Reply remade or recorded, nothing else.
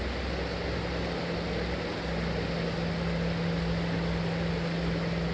recorded